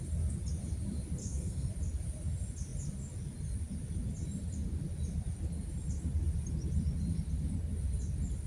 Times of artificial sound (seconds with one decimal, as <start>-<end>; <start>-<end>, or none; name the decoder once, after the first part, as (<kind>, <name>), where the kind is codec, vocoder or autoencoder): 1.2-1.7 (codec, SNAC)